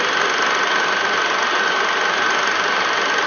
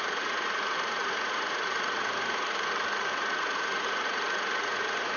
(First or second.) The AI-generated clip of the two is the second